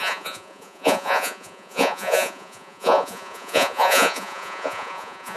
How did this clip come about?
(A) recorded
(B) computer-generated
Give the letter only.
B